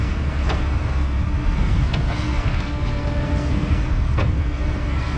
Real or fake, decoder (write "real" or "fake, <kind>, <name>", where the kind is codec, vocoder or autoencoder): fake, codec, SNAC